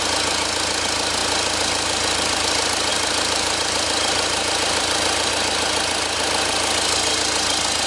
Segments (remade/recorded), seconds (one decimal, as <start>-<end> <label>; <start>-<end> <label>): 0.0-1.2 recorded; 1.2-2.4 remade; 2.4-2.9 recorded; 2.9-5.3 remade; 5.3-7.9 recorded